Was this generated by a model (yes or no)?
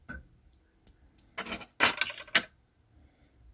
no